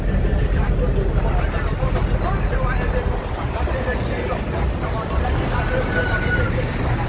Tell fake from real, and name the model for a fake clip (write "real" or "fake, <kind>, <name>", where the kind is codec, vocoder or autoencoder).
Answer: real